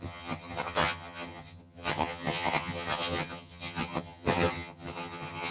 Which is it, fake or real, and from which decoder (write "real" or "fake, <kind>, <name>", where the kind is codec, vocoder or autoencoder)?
fake, vocoder, HiFi-GAN